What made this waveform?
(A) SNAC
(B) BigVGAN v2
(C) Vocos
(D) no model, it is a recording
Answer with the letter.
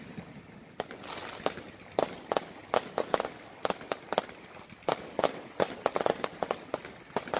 D